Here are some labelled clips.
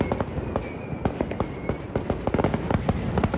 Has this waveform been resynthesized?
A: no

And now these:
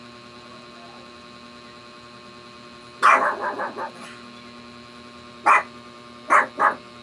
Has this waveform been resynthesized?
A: no